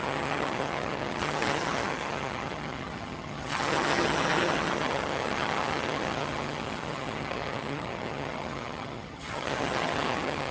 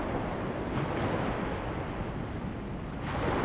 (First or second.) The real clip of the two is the second